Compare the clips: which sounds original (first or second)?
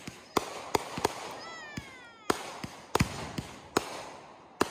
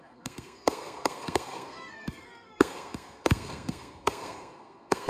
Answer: first